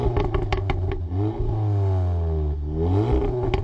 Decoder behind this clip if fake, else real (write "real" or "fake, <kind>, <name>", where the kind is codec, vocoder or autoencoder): real